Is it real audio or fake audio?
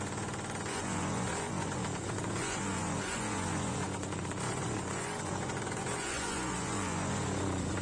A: fake